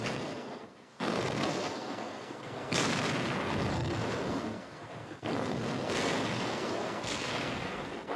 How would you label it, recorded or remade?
remade